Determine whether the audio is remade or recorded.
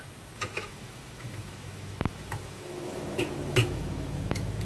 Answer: remade